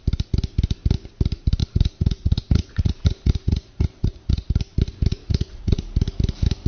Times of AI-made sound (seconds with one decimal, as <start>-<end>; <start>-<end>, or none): 1.6-4.5; 5.1-5.8